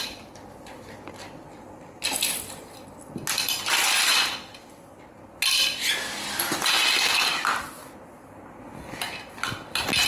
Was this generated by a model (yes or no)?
no